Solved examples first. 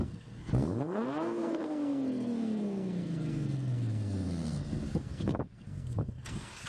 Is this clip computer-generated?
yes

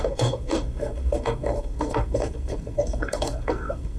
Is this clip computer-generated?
yes